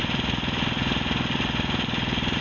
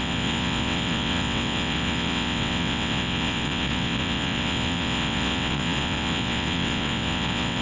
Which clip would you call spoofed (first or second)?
second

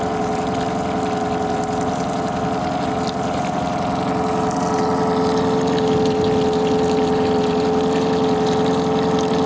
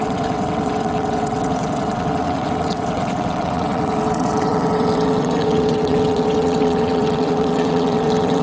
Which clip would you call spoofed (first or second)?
second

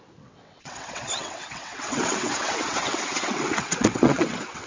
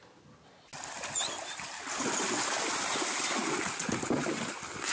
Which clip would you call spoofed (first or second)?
first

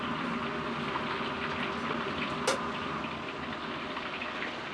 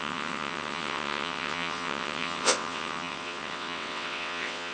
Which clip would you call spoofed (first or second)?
second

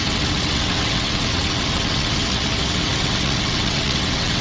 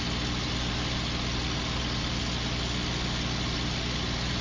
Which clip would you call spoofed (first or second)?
first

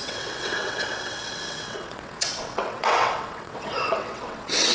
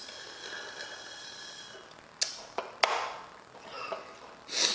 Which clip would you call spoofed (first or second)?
first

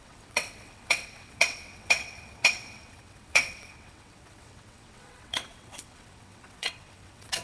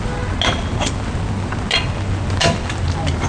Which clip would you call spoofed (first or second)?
first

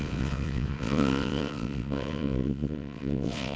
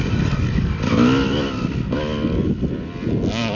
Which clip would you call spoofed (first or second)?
first